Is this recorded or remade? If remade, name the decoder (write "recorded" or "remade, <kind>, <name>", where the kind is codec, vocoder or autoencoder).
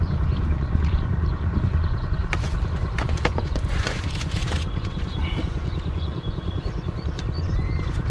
remade, vocoder, Vocos